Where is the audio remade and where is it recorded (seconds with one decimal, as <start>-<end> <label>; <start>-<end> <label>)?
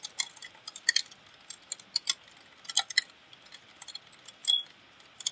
0.0-5.3 recorded